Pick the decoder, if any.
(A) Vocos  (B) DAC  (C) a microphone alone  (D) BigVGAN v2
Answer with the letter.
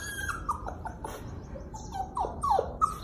D